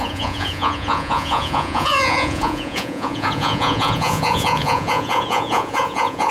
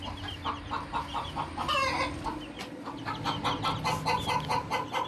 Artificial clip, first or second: first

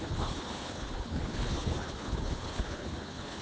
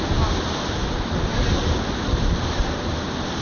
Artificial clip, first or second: first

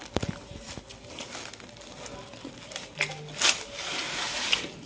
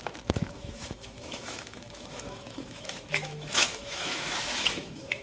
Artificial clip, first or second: second